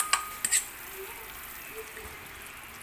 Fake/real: real